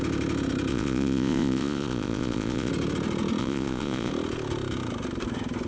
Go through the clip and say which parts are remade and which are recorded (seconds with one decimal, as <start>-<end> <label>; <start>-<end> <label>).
0.0-0.7 recorded; 0.7-2.7 remade; 2.7-3.4 recorded; 3.4-4.1 remade; 4.1-5.7 recorded